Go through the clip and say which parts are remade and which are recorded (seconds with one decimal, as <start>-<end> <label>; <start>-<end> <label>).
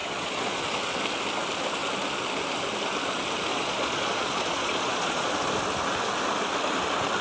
0.0-0.6 remade; 0.6-3.5 recorded; 3.5-5.3 remade; 5.3-7.2 recorded